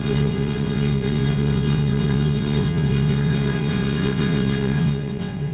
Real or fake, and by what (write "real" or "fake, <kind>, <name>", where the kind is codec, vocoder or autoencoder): fake, vocoder, WaveNeXt